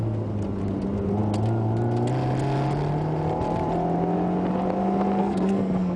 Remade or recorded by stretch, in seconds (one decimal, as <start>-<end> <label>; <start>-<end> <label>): 0.0-5.2 recorded; 5.2-6.0 remade